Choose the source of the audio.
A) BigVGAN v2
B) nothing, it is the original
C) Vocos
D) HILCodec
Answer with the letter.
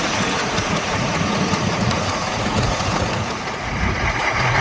C